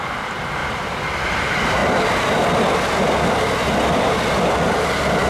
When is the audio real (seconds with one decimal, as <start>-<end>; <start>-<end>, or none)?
0.6-1.4; 1.8-5.3